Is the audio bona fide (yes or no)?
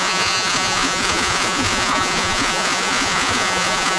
no